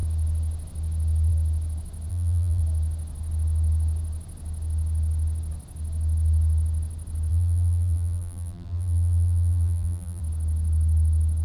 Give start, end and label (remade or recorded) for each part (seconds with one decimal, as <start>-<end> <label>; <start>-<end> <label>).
0.0-2.1 recorded; 2.1-2.6 remade; 2.6-7.3 recorded; 7.3-10.2 remade; 10.2-11.4 recorded